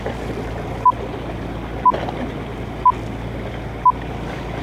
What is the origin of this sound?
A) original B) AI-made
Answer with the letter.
A